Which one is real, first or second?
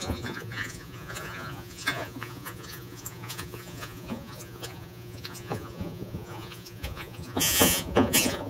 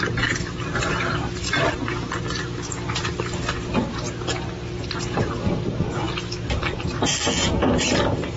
second